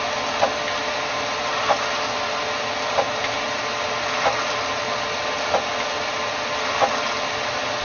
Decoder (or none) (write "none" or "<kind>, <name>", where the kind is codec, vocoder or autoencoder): none